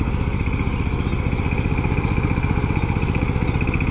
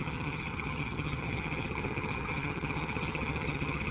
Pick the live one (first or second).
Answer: first